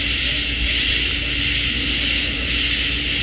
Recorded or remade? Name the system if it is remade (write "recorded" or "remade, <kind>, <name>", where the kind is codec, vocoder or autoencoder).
recorded